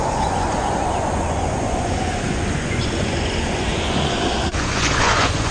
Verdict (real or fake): fake